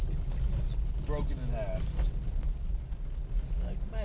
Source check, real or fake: real